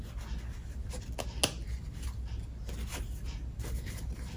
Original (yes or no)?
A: yes